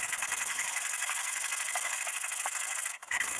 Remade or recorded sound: remade